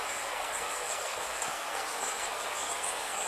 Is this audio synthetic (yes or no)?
yes